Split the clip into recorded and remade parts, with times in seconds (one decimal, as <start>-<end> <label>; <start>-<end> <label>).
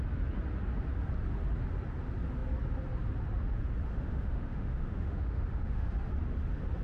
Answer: 0.0-3.9 recorded; 3.9-5.9 remade; 5.9-6.8 recorded